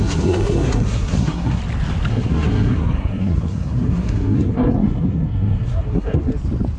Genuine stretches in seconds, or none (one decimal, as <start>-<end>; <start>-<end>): 1.6-2.1; 6.3-6.8